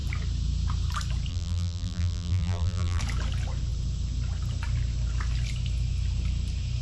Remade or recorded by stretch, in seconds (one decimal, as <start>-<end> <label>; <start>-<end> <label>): 0.0-1.3 recorded; 1.3-3.0 remade; 3.0-6.8 recorded